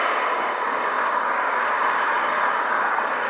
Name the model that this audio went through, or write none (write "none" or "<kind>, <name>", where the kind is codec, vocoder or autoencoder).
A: codec, DAC